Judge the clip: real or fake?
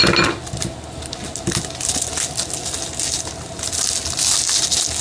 real